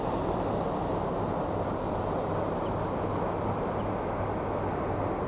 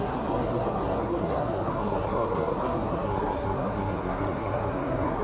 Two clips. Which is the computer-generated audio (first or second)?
second